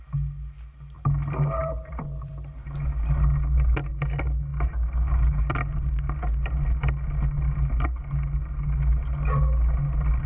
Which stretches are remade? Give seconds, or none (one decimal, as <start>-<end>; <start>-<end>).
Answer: 1.6-2.3